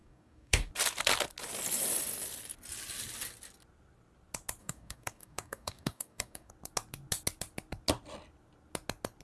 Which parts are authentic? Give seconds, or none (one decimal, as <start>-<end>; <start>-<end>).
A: 0.7-4.6; 6.5-9.2